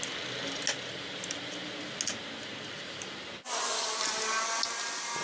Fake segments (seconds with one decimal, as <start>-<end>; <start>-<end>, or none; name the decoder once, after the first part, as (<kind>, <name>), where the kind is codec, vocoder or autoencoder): none